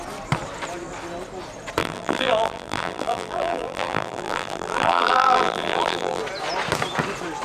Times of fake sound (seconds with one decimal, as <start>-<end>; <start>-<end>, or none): 1.8-6.2